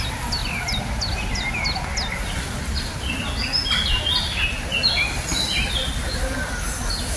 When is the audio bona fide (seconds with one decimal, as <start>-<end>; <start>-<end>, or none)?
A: 0.0-7.2